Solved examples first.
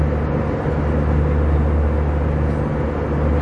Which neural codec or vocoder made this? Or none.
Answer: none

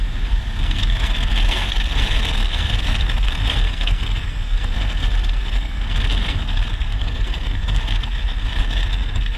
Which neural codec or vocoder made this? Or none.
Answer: codec, SNAC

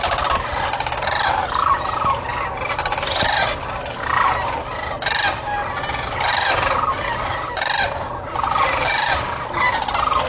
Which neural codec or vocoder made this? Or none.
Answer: none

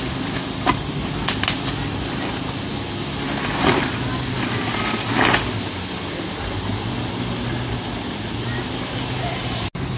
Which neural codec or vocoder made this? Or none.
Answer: none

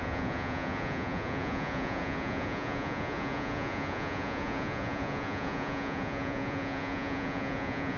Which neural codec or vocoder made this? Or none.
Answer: vocoder, Vocos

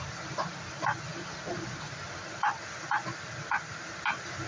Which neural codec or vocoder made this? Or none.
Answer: none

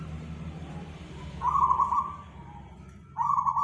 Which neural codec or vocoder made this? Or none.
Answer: vocoder, BigVGAN v2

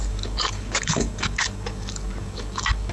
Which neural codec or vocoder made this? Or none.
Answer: codec, DAC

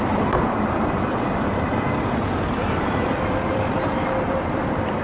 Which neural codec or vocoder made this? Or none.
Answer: vocoder, BigVGAN v2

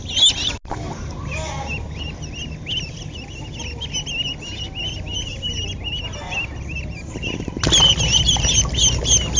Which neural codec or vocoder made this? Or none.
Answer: none